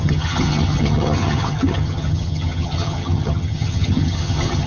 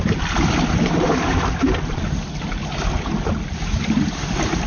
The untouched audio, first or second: second